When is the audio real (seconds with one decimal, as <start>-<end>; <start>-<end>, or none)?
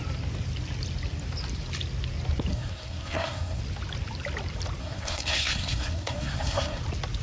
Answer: 0.0-2.5; 3.6-4.8; 6.8-7.2